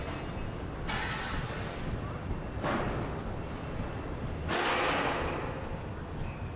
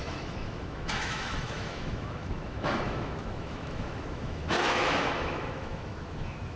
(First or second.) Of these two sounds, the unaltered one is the first